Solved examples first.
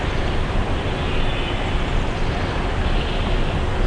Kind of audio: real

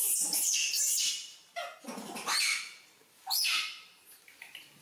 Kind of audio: real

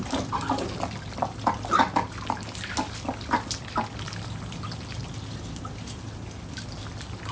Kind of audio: real